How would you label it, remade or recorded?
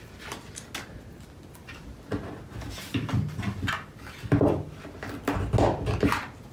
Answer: recorded